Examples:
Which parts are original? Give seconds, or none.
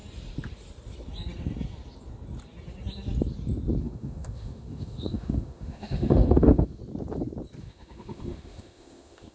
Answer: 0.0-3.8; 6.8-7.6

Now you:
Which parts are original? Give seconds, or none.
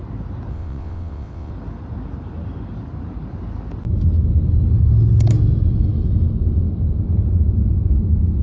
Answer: 0.0-0.5; 1.5-8.4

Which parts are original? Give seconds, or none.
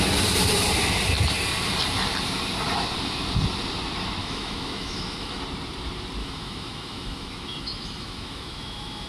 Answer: 0.0-4.2; 5.4-6.2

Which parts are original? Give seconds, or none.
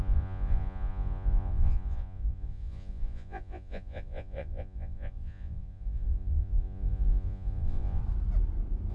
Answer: 8.0-8.9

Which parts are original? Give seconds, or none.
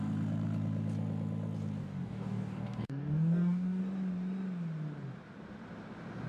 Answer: 0.0-1.8; 3.8-6.3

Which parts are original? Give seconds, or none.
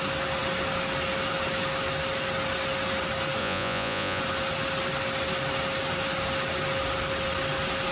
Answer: 0.0-3.4; 4.2-7.9